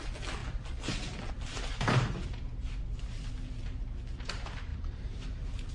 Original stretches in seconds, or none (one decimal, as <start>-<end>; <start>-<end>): 0.0-4.7